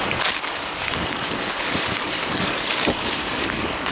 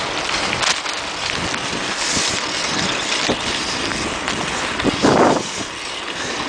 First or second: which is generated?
first